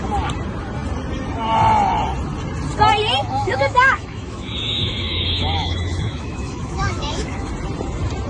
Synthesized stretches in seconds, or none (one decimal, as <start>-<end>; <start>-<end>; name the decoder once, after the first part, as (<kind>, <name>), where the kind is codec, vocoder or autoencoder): 3.2-7.5 (autoencoder, DAC-VAE)